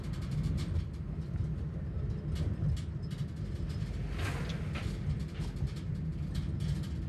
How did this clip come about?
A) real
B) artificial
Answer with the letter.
A